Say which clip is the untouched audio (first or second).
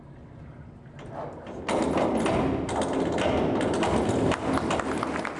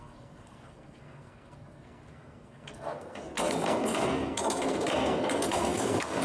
first